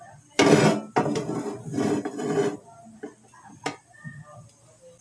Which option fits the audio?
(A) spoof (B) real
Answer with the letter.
B